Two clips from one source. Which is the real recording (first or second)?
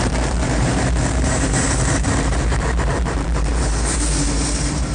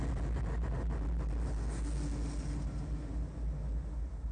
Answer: second